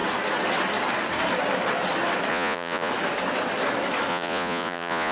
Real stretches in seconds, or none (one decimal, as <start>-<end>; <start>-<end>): 0.0-2.3; 2.9-4.1